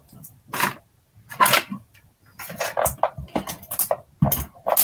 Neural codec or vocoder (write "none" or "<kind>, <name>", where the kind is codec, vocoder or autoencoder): none